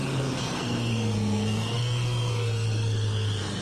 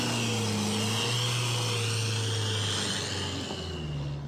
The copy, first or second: first